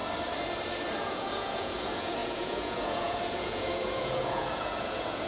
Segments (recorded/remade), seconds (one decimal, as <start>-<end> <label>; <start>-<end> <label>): 0.0-1.0 recorded; 1.0-5.3 remade